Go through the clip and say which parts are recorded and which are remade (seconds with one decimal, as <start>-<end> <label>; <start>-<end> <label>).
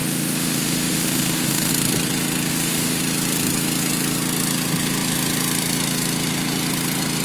0.0-1.7 remade; 1.7-2.5 recorded; 2.5-3.0 remade; 3.0-7.2 recorded